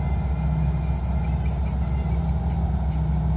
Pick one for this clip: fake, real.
real